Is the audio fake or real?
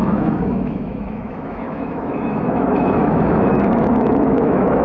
fake